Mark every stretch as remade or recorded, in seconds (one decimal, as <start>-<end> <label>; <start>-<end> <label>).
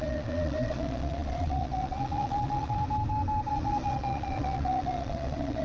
0.0-2.8 remade; 2.8-3.5 recorded; 3.5-5.6 remade